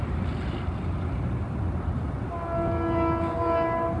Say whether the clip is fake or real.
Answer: real